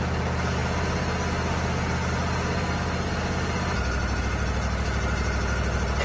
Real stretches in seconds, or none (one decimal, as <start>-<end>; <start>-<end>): 0.0-6.0